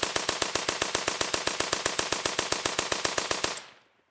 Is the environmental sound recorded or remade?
recorded